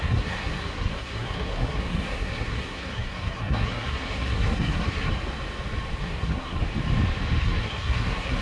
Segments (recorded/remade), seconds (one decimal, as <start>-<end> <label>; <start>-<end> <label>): 0.0-5.1 remade; 5.1-6.0 recorded; 6.0-6.6 remade; 6.6-7.4 recorded; 7.4-8.4 remade